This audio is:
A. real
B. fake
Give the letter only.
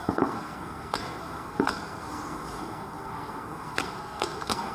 B